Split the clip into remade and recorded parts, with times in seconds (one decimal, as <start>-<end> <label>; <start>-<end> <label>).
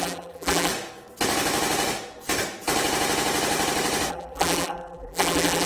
0.0-0.7 remade; 0.7-4.1 recorded; 4.1-5.7 remade